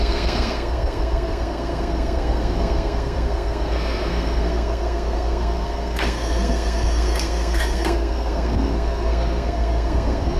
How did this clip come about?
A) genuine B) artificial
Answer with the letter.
B